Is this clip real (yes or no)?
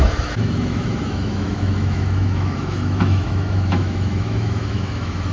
no